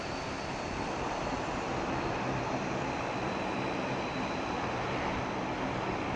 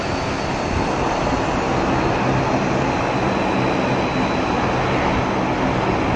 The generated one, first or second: first